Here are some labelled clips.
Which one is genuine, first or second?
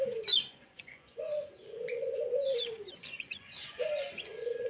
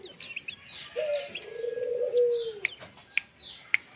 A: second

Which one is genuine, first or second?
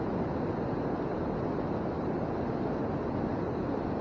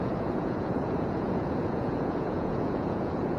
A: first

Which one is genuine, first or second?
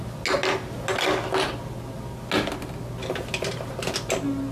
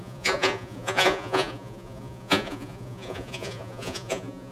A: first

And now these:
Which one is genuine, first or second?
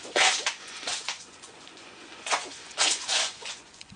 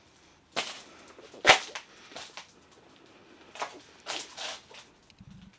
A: second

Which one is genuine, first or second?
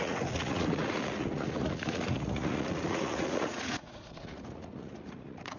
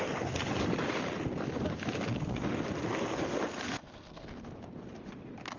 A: second